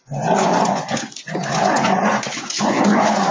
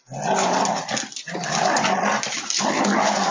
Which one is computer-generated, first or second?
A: first